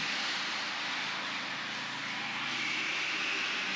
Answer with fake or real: real